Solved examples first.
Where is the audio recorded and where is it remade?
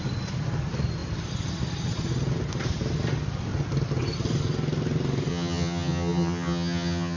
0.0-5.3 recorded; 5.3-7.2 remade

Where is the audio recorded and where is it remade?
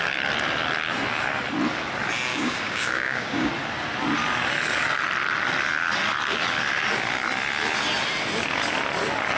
0.0-2.3 recorded; 2.3-3.5 remade; 3.5-9.4 recorded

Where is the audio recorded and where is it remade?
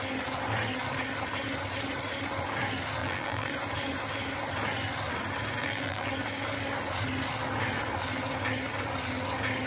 0.0-3.0 recorded; 3.0-3.5 remade; 3.5-5.6 recorded; 5.6-6.1 remade; 6.1-9.7 recorded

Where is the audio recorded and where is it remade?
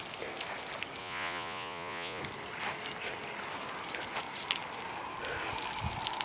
0.0-1.0 recorded; 1.0-2.2 remade; 2.2-6.2 recorded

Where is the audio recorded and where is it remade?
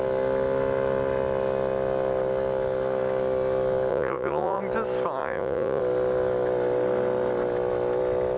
0.0-3.9 recorded; 3.9-4.6 remade; 4.6-5.2 recorded; 5.2-5.8 remade; 5.8-8.4 recorded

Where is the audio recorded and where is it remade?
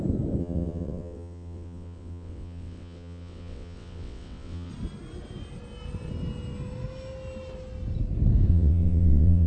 0.0-0.4 recorded; 0.4-4.7 remade; 4.7-8.5 recorded; 8.5-9.5 remade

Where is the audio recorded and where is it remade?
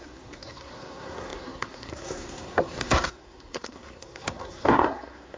0.0-5.4 remade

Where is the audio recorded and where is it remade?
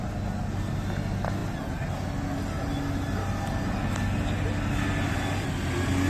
0.0-6.1 recorded